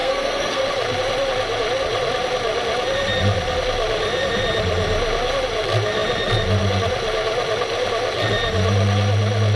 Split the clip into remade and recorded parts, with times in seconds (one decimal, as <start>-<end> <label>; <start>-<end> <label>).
0.0-0.6 remade; 0.6-9.6 recorded

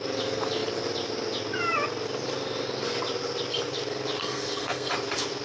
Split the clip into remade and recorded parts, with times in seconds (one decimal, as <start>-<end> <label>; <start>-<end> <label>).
0.0-4.2 recorded; 4.2-4.9 remade; 4.9-5.4 recorded